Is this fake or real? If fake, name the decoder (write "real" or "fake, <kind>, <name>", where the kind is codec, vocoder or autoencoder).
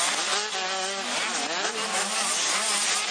real